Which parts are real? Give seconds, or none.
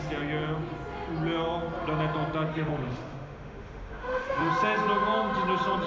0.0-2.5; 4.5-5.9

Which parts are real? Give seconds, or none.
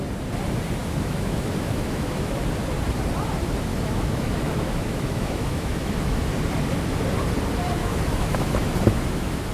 0.0-0.8; 2.4-3.7; 6.3-7.8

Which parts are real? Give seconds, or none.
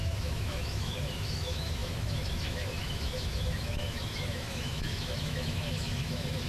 none